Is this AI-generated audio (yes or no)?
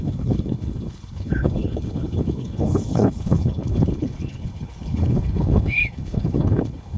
yes